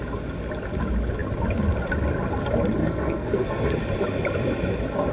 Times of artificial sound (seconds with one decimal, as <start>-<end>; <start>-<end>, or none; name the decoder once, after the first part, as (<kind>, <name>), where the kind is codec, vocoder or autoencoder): 2.8-3.7 (codec, SNAC)